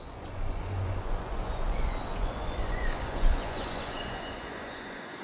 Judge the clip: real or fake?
fake